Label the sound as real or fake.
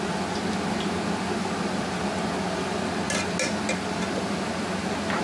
real